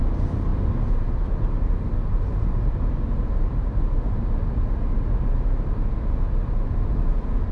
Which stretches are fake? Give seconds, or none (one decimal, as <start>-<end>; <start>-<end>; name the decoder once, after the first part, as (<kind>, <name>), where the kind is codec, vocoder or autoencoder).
none